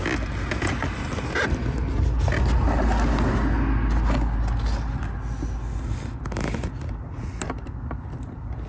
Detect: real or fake real